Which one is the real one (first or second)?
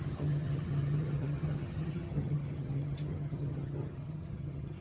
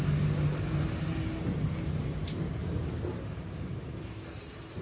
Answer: second